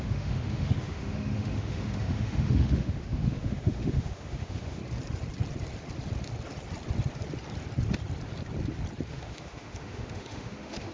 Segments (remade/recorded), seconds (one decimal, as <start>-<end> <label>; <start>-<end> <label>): 0.0-4.8 remade; 4.8-9.1 recorded; 9.1-10.9 remade